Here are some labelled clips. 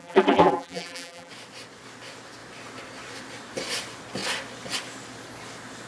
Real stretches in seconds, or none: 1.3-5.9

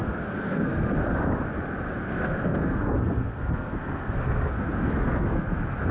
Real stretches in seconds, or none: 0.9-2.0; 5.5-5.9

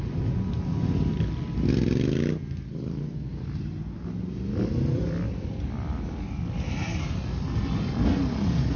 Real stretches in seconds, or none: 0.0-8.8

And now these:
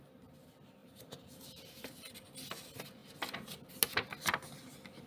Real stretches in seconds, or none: 0.0-0.8; 1.9-5.1